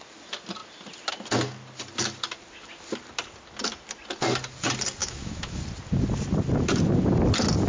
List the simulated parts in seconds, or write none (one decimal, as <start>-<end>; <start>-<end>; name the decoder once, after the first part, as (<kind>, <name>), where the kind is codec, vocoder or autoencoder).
5.0-5.6 (autoencoder, DAC-VAE)